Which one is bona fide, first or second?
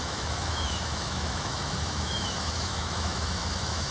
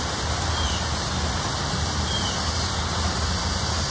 second